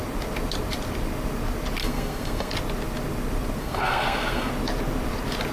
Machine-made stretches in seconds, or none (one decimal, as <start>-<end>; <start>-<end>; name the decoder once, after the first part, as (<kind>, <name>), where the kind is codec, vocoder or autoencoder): 1.8-2.5 (codec, SNAC); 3.6-4.5